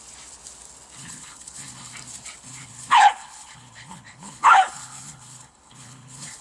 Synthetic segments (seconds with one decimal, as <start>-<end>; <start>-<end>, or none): 1.0-1.9; 2.5-6.4